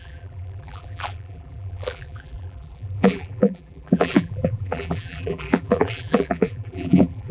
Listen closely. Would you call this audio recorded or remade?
remade